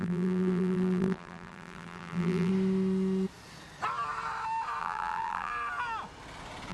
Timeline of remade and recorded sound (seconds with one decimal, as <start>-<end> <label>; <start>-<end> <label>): 0.0-2.5 remade; 2.5-4.8 recorded; 4.8-5.5 remade; 5.5-6.7 recorded